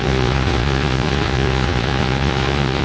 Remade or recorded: remade